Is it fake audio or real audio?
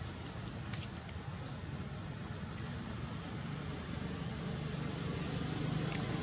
real